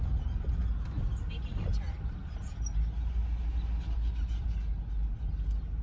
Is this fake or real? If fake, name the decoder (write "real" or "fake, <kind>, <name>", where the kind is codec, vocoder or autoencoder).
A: real